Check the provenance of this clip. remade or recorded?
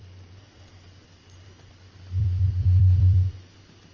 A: remade